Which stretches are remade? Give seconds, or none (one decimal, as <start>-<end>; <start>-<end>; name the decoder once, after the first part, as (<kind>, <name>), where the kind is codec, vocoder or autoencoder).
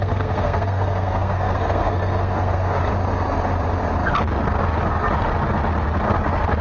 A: 0.0-2.8 (codec, SNAC)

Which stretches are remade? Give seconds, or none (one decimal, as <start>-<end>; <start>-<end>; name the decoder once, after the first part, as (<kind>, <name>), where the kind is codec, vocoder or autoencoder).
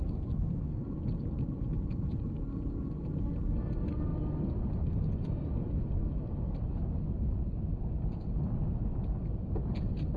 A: 0.0-0.8 (codec, SNAC)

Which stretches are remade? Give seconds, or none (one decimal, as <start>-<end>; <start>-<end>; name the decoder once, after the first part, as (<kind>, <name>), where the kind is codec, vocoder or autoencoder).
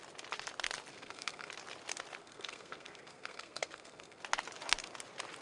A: 0.9-1.5 (codec, SNAC); 2.2-4.2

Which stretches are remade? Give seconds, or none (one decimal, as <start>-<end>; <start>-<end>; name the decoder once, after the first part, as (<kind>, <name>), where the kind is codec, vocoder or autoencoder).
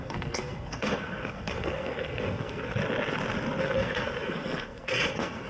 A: 0.0-2.8 (codec, SNAC); 3.6-5.5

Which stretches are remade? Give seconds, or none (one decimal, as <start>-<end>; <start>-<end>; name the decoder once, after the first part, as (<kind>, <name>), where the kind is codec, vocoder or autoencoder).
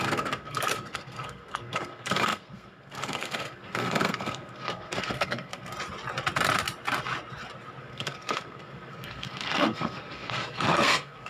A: 0.0-5.7 (codec, SNAC); 7.8-11.3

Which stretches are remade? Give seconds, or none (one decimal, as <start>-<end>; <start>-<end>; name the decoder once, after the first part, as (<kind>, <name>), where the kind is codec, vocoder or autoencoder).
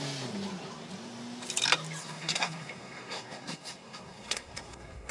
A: 2.0-5.1 (codec, SNAC)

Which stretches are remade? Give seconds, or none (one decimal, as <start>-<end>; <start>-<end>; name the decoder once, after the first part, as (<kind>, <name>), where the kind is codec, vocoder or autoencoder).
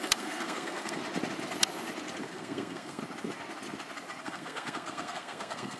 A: 0.0-1.0 (codec, SNAC); 2.2-3.0; 4.2-5.8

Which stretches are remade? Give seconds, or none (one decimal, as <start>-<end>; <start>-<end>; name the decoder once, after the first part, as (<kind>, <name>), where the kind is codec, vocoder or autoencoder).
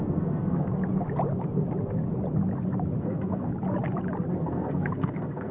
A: 0.0-0.7 (codec, SNAC); 3.0-3.5; 4.3-5.5